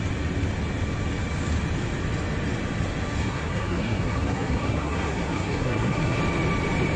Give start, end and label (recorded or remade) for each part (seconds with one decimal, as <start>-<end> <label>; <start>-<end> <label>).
0.0-3.2 recorded; 3.2-6.2 remade; 6.2-7.0 recorded